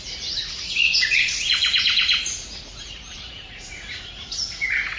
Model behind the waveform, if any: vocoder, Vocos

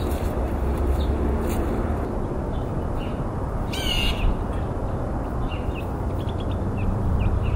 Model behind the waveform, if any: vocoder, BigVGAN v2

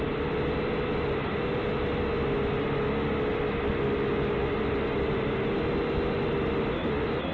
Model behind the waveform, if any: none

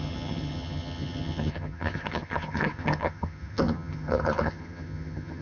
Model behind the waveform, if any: vocoder, HiFi-GAN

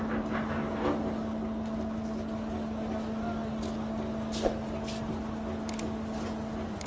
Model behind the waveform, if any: none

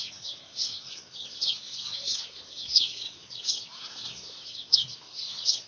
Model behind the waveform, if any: codec, SNAC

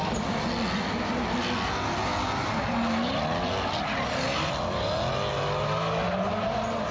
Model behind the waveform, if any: none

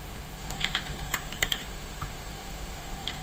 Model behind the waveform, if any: autoencoder, DAC-VAE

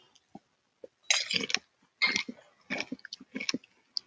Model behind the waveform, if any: none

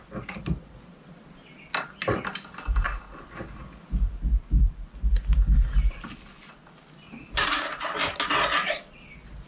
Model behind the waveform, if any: none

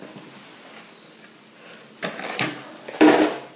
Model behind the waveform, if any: none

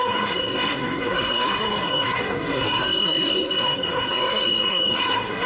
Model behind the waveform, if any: codec, SNAC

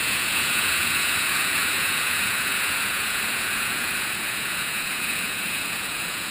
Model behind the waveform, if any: vocoder, Vocos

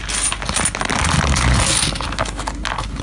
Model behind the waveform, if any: none